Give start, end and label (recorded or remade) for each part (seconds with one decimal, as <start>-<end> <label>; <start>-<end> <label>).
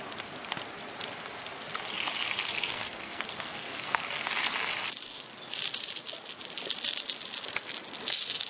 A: 0.0-2.6 recorded; 2.6-4.3 remade; 4.3-8.5 recorded